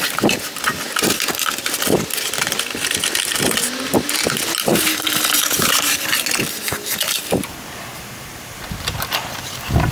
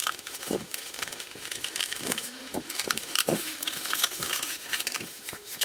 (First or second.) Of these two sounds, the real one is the first